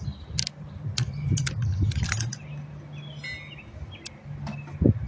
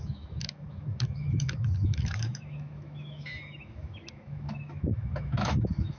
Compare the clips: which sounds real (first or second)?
first